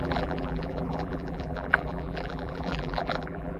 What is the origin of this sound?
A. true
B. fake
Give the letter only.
B